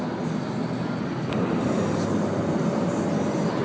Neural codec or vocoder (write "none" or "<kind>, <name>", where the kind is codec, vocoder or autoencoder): none